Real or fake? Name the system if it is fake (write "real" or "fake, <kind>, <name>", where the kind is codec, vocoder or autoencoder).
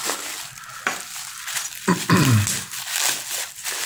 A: real